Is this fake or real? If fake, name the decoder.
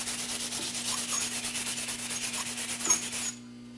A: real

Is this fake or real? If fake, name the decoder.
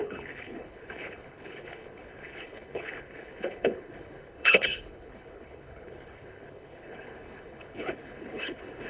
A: fake, codec, HILCodec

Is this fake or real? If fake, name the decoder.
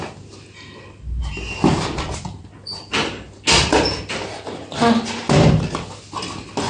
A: real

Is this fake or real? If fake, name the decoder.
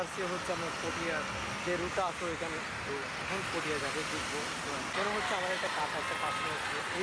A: real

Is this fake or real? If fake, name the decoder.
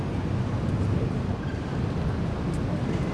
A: real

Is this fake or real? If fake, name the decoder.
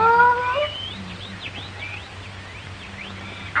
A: real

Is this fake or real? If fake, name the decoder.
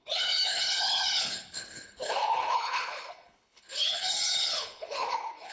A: fake, codec, HILCodec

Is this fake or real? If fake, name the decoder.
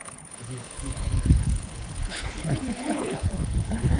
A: fake, codec, HILCodec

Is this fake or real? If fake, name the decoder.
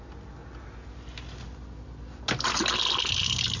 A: real